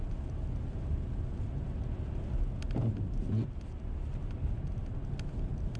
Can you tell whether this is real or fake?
real